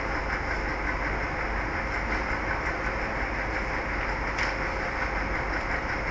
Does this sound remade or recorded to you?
recorded